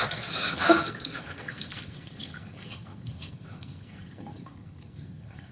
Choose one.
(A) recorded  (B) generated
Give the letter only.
B